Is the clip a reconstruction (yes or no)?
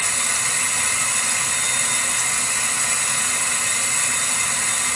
no